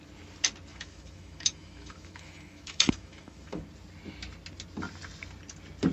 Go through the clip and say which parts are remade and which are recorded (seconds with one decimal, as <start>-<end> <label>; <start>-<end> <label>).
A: 0.0-0.7 recorded; 0.7-3.6 remade; 3.6-5.9 recorded